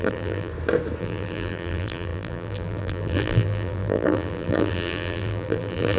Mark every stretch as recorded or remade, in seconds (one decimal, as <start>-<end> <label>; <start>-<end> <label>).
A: 0.0-0.5 remade; 0.5-1.0 recorded; 1.0-6.0 remade

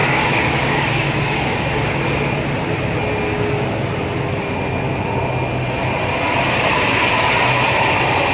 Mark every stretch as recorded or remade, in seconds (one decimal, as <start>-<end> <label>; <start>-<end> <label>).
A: 0.0-2.0 remade; 2.0-8.3 recorded

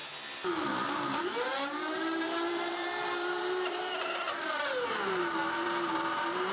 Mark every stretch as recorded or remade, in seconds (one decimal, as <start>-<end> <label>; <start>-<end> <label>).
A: 0.0-0.9 recorded; 0.9-6.5 remade

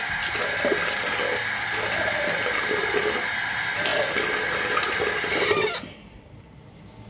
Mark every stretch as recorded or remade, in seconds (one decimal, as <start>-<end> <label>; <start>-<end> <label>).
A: 0.0-7.1 recorded